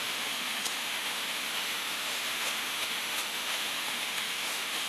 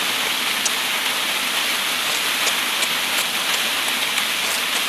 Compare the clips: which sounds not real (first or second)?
first